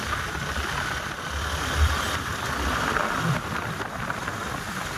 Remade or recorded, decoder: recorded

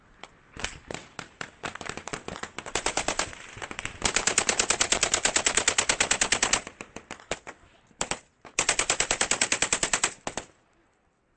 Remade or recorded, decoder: remade, vocoder, BigVGAN v2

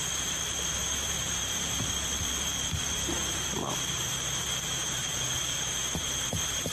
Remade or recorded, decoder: remade, vocoder, BigVGAN v2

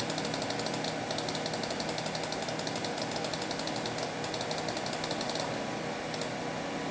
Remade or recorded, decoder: recorded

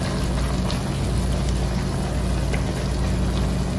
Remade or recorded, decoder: recorded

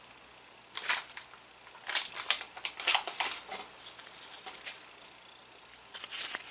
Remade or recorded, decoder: recorded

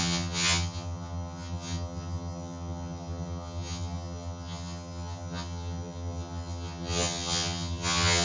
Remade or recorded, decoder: remade, vocoder, HiFi-GAN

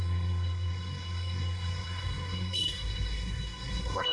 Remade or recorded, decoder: remade, codec, SNAC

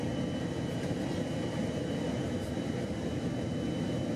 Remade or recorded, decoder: remade, vocoder, BigVGAN v2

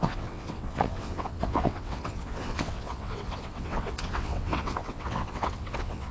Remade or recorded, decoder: remade, vocoder, WaveNeXt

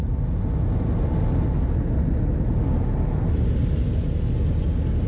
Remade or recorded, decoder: recorded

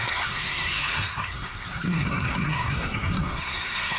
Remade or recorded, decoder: remade, codec, SNAC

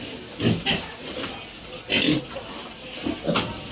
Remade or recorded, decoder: recorded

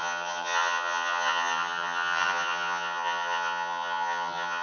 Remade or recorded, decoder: remade, vocoder, HiFi-GAN